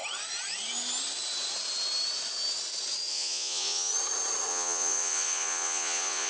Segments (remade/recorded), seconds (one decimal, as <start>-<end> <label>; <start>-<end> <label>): 0.0-3.1 recorded; 3.1-3.9 remade; 3.9-4.5 recorded; 4.5-6.3 remade